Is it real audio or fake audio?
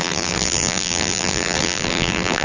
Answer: fake